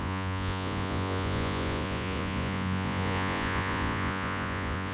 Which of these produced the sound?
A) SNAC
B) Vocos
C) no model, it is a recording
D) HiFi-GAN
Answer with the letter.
B